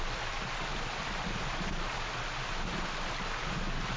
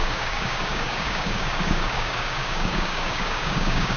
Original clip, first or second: first